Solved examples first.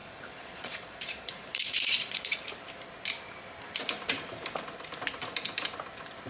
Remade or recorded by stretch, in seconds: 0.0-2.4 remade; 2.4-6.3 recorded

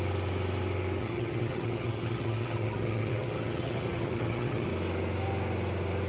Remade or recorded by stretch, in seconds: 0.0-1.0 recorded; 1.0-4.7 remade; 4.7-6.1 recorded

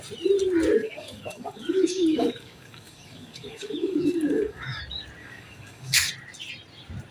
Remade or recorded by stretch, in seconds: 0.0-0.8 recorded; 0.8-4.8 remade; 4.8-5.2 recorded; 5.2-6.1 remade; 6.1-7.1 recorded